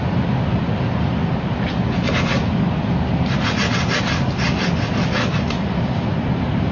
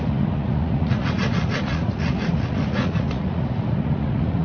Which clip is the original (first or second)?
first